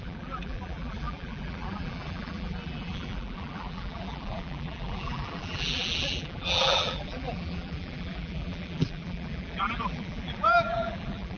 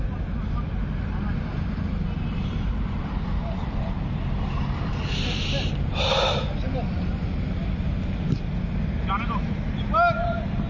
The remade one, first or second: first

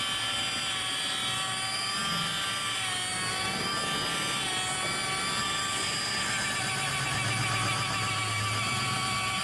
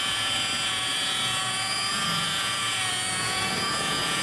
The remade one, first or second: second